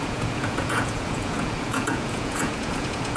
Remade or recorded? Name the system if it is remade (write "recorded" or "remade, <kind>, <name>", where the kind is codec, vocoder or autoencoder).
remade, vocoder, Vocos